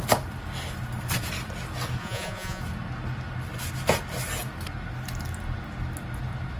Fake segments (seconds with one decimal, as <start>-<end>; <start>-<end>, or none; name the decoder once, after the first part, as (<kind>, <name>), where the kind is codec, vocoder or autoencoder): 2.0-2.6 (vocoder, Vocos)